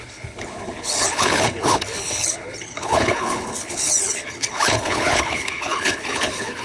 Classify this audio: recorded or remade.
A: remade